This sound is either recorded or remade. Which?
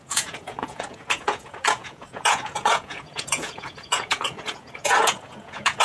remade